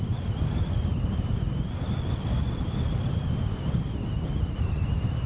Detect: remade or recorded recorded